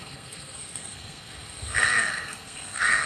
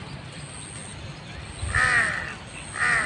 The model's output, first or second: first